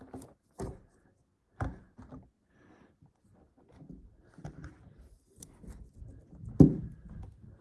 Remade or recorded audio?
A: recorded